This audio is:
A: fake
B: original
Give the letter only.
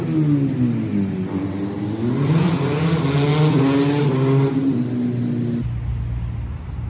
B